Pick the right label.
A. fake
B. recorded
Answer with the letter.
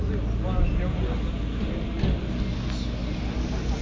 B